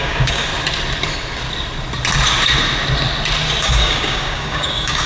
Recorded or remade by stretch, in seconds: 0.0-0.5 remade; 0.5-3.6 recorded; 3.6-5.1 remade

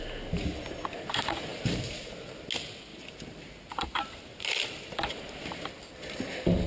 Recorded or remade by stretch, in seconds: 0.0-1.5 recorded; 1.5-2.0 remade; 2.0-2.9 recorded; 2.9-5.7 remade; 5.7-6.7 recorded

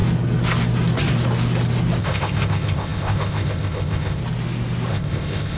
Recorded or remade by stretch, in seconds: 0.0-2.0 recorded; 2.0-4.2 remade; 4.2-4.9 recorded; 4.9-5.6 remade

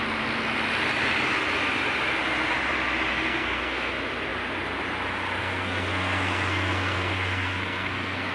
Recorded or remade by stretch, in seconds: 0.0-3.1 recorded; 3.1-3.9 remade; 3.9-5.4 recorded; 5.4-8.3 remade

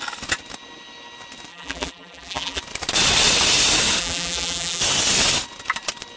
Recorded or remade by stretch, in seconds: 0.0-1.5 recorded; 1.5-2.6 remade; 2.6-4.0 recorded; 4.0-4.8 remade; 4.8-6.2 recorded

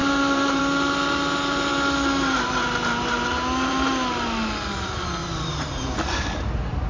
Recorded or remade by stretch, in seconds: 0.0-0.6 remade; 0.6-5.2 recorded; 5.2-6.9 remade